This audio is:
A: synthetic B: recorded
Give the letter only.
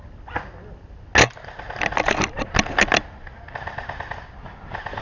B